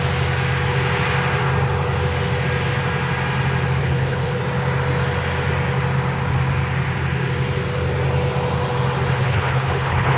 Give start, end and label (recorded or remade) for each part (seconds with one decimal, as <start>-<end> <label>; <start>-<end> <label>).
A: 0.0-3.8 recorded; 3.8-4.4 remade; 4.4-9.2 recorded; 9.2-10.2 remade